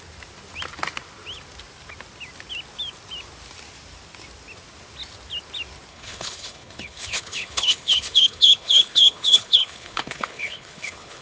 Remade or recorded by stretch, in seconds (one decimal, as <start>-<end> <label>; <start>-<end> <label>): 0.0-5.9 recorded; 5.9-11.2 remade